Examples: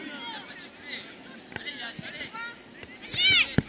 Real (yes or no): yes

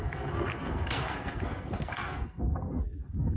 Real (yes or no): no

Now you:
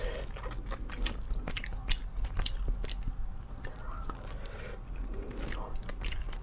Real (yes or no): yes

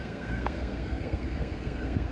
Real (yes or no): no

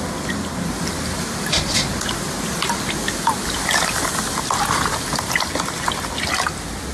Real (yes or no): yes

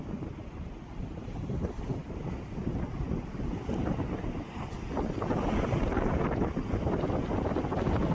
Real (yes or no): yes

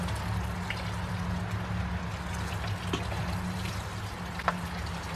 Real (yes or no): yes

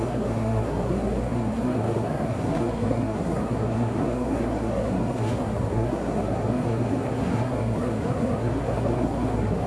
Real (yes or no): no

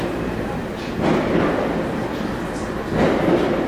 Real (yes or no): yes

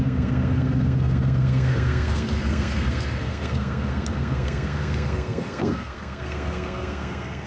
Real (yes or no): no